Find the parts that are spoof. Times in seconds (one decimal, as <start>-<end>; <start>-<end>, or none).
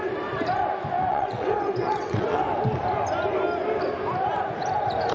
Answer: 1.1-2.4